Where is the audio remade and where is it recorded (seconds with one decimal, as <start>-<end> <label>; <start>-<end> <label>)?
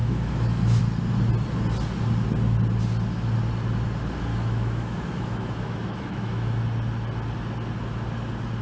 0.0-0.8 remade; 0.8-4.3 recorded; 4.3-6.6 remade; 6.6-8.6 recorded